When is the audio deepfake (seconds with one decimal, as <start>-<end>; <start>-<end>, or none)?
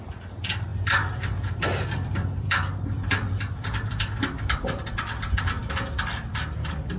0.7-4.9